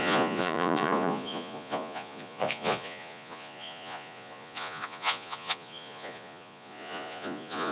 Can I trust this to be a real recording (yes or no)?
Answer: no